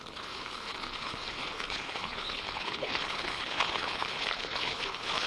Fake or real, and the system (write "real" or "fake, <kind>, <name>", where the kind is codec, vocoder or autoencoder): fake, codec, HILCodec